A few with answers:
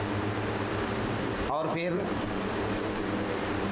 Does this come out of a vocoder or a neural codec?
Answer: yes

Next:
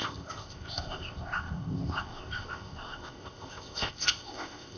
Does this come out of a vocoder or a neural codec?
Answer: yes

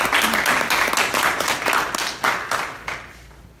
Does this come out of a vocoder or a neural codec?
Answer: no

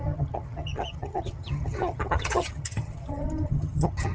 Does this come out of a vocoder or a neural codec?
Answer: yes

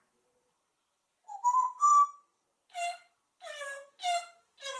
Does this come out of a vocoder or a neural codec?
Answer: no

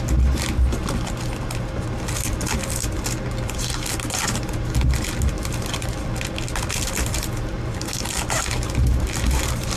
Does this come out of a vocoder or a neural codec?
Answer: no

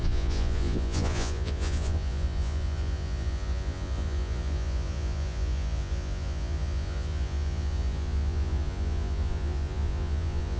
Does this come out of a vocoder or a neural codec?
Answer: yes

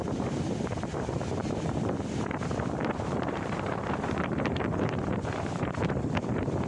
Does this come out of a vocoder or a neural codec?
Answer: yes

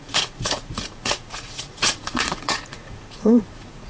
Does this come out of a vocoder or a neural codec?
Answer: yes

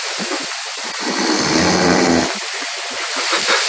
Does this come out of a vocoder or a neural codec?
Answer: no